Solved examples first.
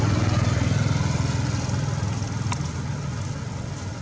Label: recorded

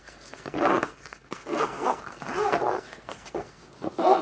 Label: remade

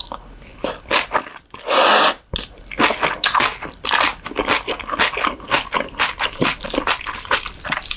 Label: recorded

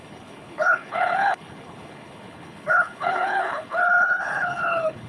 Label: remade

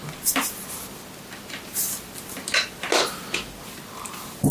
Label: recorded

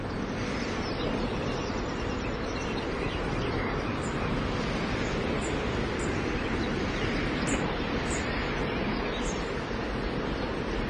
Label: recorded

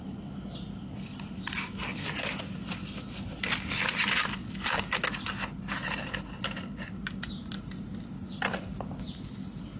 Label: recorded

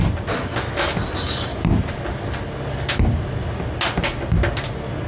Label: recorded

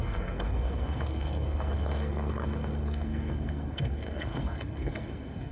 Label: remade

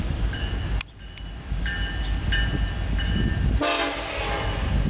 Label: recorded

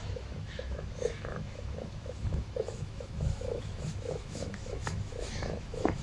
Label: remade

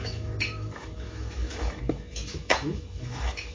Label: remade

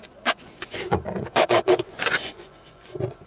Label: remade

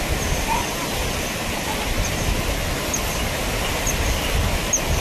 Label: recorded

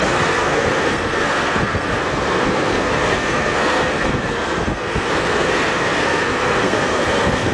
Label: remade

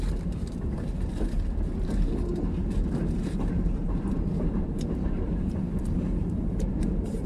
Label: remade